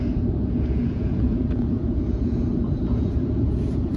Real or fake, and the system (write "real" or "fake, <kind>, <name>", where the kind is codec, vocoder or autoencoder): fake, vocoder, Vocos